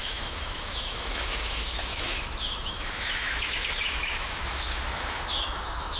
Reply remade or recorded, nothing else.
remade